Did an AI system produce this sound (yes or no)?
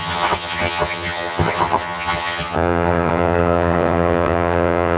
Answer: yes